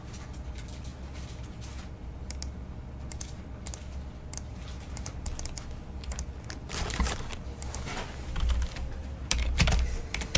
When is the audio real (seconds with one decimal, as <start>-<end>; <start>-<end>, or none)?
0.0-4.5; 5.3-9.0; 10.0-10.4